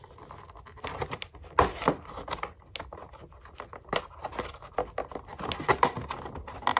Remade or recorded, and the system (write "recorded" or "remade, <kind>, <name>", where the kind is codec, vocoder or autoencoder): recorded